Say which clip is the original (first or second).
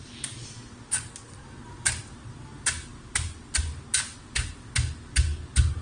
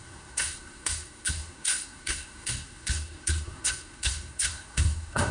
first